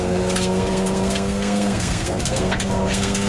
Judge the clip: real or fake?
fake